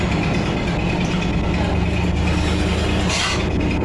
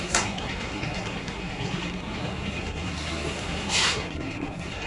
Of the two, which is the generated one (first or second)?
second